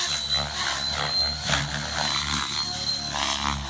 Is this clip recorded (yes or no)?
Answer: yes